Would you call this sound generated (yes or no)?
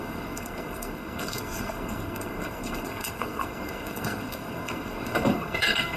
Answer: yes